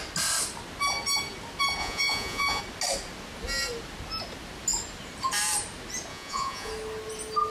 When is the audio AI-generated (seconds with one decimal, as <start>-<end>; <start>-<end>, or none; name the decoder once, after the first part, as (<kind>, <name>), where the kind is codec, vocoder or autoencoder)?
1.8-2.6 (vocoder, Vocos); 6.1-6.7